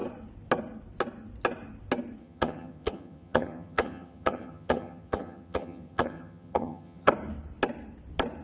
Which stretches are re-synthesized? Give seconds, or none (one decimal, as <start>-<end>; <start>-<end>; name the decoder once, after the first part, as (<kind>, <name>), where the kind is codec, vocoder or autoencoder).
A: 2.2-7.1 (vocoder, HiFi-GAN)

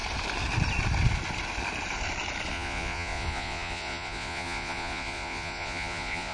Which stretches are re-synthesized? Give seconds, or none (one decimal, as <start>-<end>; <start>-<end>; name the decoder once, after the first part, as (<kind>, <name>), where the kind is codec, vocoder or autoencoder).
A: 2.5-6.3 (vocoder, Vocos)

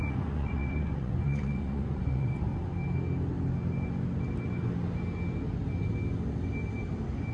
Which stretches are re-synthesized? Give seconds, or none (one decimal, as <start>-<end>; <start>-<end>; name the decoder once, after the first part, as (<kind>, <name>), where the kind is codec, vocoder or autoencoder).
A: 0.0-2.5 (vocoder, Vocos)

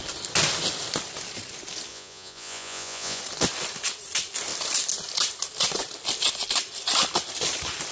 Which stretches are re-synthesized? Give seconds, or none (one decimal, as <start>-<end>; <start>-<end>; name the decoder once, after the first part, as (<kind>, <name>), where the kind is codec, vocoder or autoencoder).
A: 1.9-3.2 (vocoder, Vocos)